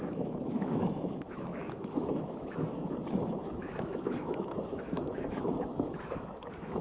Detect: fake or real fake